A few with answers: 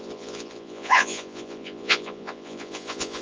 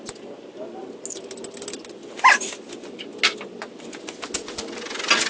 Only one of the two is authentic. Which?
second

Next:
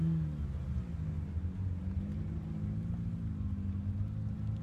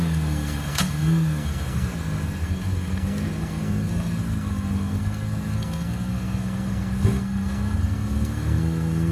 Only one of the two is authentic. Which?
first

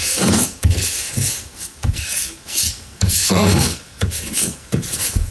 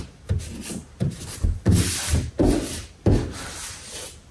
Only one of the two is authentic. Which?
second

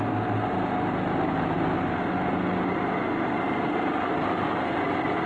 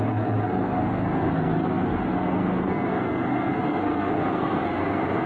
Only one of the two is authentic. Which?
first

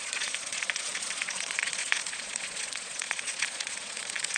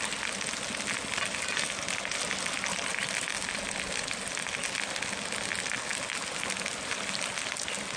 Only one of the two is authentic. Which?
second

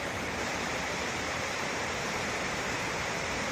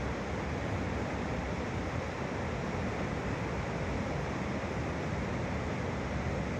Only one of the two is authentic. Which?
second